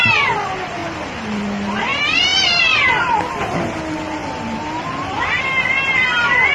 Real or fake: real